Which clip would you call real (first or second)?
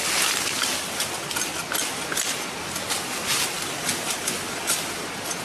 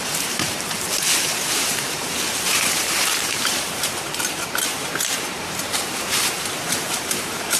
first